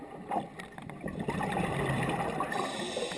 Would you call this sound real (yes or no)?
yes